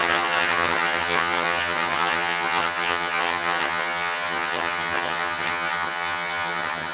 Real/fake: fake